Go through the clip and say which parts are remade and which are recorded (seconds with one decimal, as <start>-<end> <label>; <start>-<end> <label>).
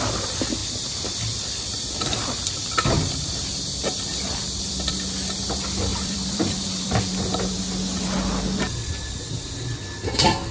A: 0.0-0.6 recorded; 0.6-4.9 remade; 4.9-5.9 recorded; 5.9-7.2 remade; 7.2-10.5 recorded